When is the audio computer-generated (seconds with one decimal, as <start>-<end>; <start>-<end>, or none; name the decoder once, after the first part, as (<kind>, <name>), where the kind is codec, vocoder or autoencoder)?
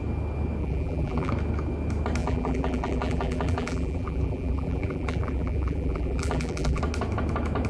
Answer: 0.6-1.3 (vocoder, BigVGAN v2); 2.2-6.8